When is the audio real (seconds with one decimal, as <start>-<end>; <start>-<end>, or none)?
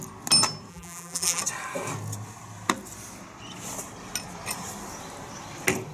0.0-0.7; 1.4-5.9